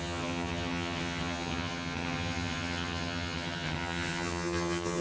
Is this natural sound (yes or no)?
no